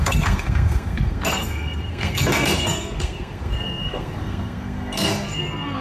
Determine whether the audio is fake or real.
fake